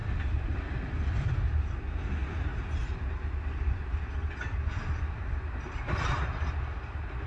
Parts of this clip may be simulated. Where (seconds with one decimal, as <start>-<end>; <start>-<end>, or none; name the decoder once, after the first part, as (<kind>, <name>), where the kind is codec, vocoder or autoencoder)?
none